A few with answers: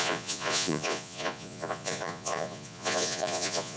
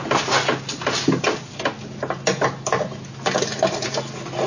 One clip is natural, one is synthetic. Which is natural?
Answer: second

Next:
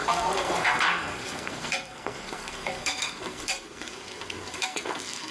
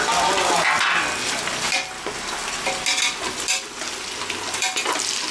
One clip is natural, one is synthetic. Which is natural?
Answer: second